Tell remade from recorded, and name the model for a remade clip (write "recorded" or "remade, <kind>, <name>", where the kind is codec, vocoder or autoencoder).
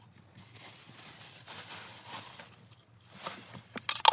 recorded